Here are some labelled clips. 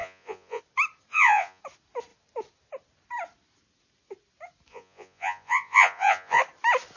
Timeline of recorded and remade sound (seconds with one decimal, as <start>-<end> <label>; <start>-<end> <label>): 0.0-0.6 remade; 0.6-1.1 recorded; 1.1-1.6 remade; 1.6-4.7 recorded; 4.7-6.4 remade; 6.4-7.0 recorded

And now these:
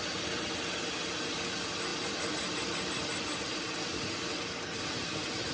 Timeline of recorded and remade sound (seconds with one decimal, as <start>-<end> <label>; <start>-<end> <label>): 0.0-5.5 recorded

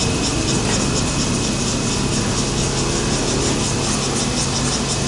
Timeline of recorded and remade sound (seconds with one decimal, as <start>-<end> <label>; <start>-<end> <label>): 0.0-5.1 recorded

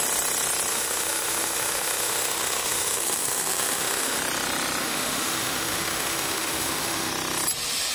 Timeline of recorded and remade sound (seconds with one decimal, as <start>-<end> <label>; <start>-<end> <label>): 0.0-0.7 recorded; 0.7-4.2 remade; 4.2-4.8 recorded; 4.8-7.1 remade; 7.1-7.9 recorded